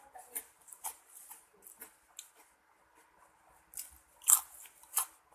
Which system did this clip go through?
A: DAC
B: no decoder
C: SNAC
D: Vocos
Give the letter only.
B